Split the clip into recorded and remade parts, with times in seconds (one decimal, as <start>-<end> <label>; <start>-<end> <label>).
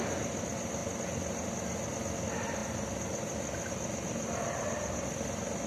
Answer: 0.0-5.7 recorded